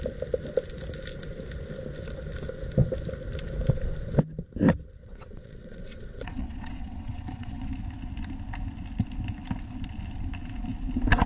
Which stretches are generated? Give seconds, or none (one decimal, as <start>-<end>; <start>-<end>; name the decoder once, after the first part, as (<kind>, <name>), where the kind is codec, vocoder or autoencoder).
5.0-7.7 (vocoder, WaveNeXt)